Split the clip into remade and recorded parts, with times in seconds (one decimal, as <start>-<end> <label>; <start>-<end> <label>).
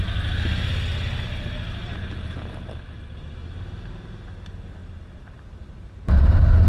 0.0-4.8 recorded; 4.8-6.3 remade; 6.3-6.7 recorded